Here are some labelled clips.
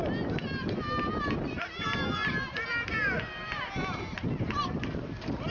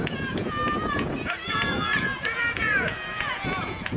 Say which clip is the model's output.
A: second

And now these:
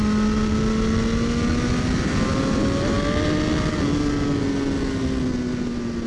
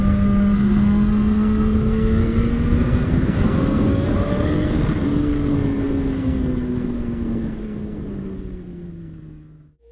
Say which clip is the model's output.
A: second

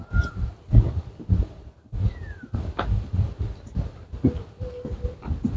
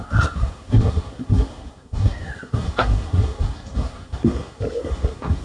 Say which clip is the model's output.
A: second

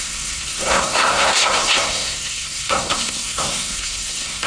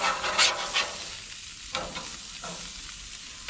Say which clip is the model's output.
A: first